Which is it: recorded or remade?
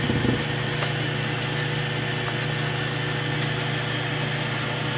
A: recorded